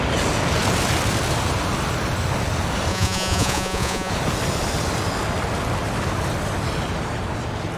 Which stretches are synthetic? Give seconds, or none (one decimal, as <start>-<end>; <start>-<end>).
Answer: 2.9-4.1